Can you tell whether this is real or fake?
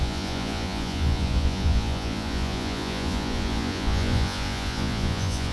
fake